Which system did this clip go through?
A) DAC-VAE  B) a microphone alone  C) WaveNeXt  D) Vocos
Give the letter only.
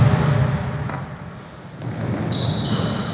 B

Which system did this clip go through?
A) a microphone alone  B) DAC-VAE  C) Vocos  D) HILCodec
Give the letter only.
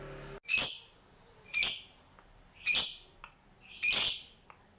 A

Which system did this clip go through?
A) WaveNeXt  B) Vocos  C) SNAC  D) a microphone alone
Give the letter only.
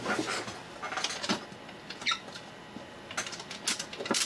D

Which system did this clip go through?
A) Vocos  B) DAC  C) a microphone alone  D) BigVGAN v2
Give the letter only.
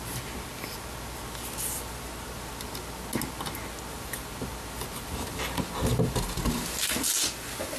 C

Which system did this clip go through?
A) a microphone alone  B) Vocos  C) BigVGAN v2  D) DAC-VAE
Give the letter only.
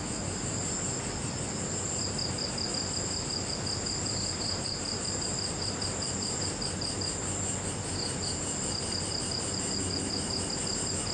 A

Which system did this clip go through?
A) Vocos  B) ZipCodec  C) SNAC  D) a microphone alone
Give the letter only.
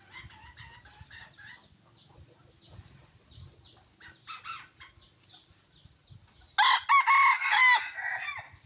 D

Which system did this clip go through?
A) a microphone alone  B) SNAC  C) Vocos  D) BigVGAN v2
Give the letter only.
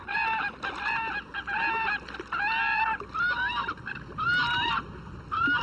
A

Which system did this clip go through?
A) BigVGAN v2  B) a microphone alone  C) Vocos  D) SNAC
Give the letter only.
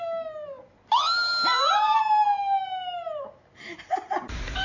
B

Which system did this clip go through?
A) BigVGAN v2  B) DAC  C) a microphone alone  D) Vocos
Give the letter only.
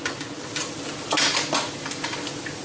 C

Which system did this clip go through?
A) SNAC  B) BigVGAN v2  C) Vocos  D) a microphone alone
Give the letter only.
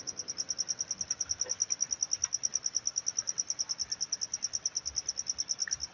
D